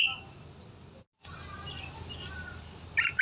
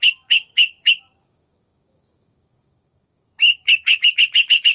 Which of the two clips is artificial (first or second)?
second